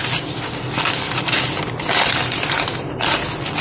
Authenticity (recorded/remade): recorded